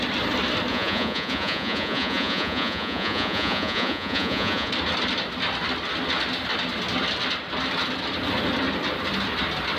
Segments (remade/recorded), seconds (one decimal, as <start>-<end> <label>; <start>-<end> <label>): 0.0-0.7 recorded; 0.7-4.7 remade; 4.7-9.8 recorded